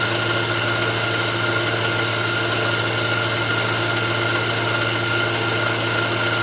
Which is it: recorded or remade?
recorded